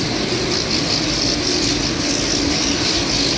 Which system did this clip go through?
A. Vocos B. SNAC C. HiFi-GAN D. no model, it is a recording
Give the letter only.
D